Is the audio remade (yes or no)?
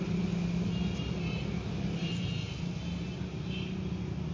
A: no